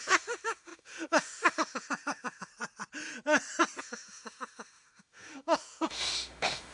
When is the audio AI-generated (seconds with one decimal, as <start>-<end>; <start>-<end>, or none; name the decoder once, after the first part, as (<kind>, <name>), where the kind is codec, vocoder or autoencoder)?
0.0-2.5 (autoencoder, DAC-VAE); 3.8-6.7